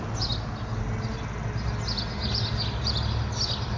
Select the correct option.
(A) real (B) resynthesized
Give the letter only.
A